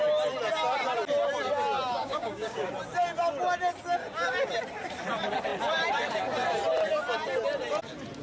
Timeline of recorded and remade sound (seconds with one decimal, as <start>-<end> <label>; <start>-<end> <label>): 0.0-2.0 recorded; 2.0-2.7 remade; 2.7-8.2 recorded